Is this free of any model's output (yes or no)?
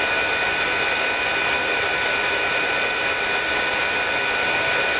yes